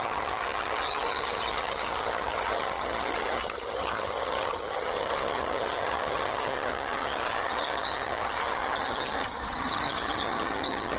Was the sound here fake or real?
fake